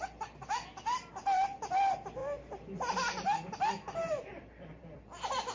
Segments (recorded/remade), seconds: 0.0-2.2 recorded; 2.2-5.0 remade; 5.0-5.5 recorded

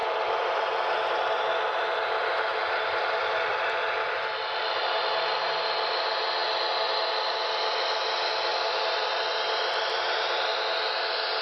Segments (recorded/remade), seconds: 0.0-1.4 remade; 1.4-2.5 recorded; 2.5-4.8 remade; 4.8-8.5 recorded; 8.5-10.4 remade; 10.4-11.4 recorded

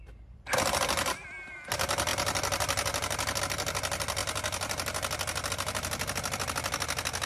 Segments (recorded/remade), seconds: 0.0-7.3 recorded

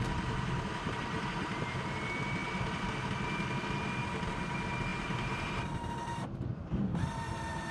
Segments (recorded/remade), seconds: 0.0-4.9 recorded; 4.9-7.7 remade

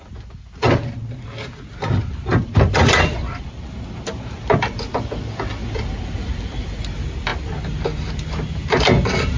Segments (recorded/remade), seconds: 0.0-2.3 recorded; 2.3-3.6 remade; 3.6-5.6 recorded; 5.6-6.6 remade; 6.6-9.4 recorded

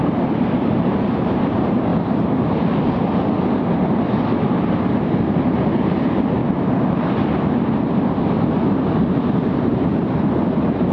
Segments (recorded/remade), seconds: 0.0-1.9 remade; 1.9-5.7 recorded; 5.7-6.4 remade; 6.4-9.4 recorded; 9.4-10.9 remade